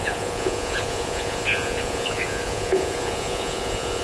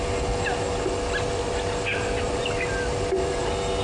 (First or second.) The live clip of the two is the second